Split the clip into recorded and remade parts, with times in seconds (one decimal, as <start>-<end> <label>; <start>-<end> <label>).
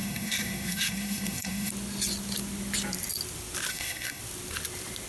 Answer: 0.0-1.7 remade; 1.7-3.7 recorded; 3.7-4.2 remade; 4.2-5.1 recorded